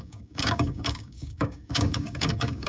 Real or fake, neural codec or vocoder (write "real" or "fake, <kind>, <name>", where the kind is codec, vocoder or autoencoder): fake, codec, DAC